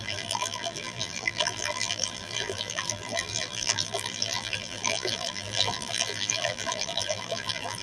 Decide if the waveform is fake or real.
fake